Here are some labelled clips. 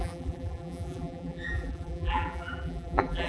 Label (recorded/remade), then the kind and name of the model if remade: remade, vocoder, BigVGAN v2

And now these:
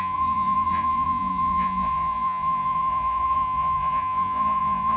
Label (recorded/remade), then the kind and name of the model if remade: remade, vocoder, Vocos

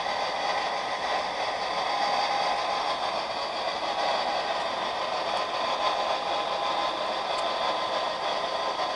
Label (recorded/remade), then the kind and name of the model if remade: recorded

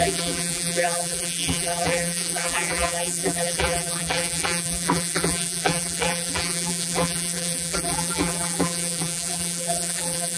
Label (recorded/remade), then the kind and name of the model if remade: remade, vocoder, BigVGAN v2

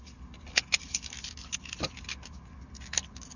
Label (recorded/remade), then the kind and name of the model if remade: recorded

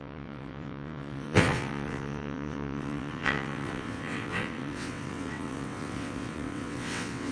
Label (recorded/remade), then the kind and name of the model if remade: remade, vocoder, WaveNeXt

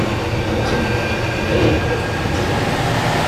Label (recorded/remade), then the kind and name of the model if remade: recorded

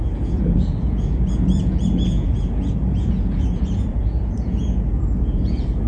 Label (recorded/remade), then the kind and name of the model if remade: remade, vocoder, Vocos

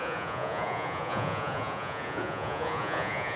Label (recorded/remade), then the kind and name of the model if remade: remade, vocoder, Vocos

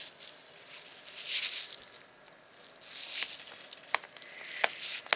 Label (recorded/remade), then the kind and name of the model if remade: recorded